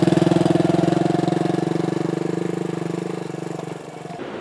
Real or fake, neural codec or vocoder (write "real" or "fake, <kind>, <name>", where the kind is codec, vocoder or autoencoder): real